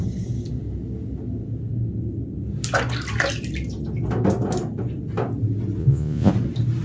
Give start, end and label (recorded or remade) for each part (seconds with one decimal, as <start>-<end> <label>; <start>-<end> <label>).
0.0-5.8 recorded; 5.8-6.3 remade; 6.3-6.8 recorded